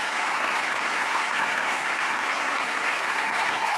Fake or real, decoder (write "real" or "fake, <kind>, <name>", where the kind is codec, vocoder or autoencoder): fake, codec, SNAC